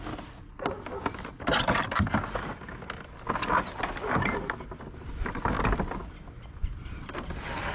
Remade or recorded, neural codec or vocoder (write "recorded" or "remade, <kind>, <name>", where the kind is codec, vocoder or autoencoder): recorded